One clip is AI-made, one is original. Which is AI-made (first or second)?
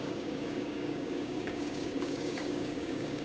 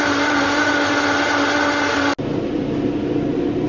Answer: first